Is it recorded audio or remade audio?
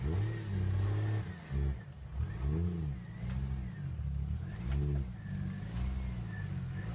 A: recorded